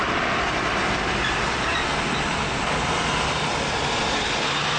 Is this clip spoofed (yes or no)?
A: no